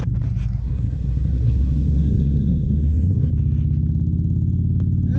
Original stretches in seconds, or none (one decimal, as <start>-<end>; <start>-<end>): 0.0-0.6; 3.3-5.2